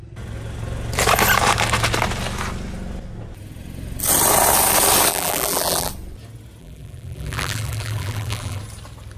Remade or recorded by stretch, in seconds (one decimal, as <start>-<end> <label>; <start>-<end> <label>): 0.0-5.1 recorded; 5.1-5.9 remade; 5.9-6.6 recorded; 6.6-8.6 remade; 8.6-9.2 recorded